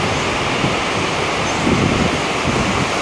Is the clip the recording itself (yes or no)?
no